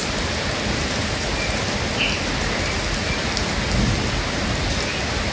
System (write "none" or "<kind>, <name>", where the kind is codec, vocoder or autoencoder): none